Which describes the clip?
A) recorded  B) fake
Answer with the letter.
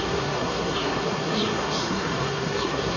B